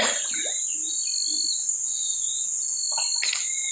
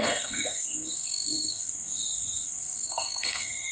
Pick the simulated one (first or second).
second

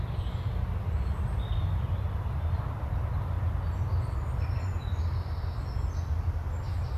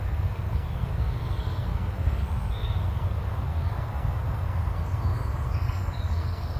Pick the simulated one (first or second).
second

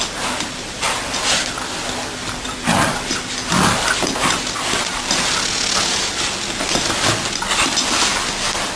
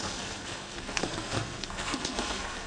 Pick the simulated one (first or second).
second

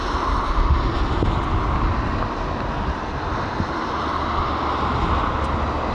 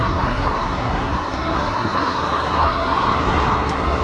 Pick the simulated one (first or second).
second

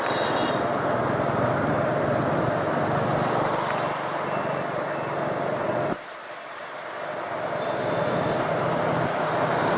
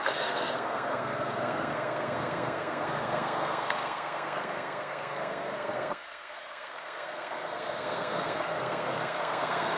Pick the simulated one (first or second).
second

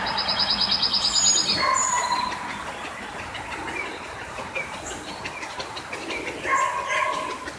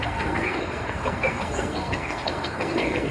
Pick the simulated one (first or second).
second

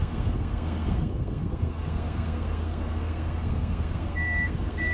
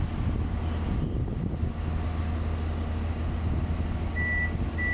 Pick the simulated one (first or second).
first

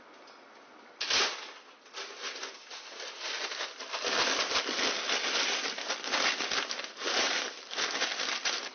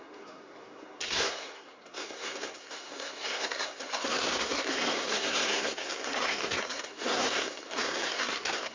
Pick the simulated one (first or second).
second